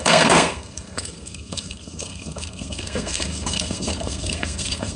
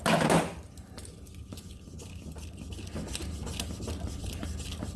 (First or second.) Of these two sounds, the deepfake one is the first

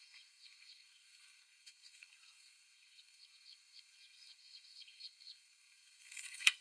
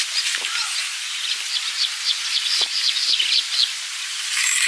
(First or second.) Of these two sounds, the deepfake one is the first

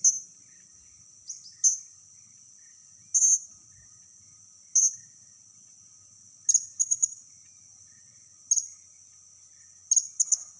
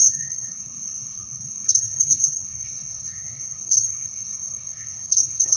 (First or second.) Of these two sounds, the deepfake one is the second